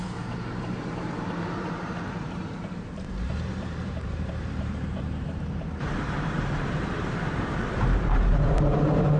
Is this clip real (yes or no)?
no